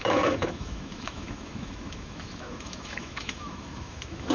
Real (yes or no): no